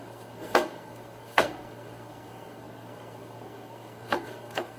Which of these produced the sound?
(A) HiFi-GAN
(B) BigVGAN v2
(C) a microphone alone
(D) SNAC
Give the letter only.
D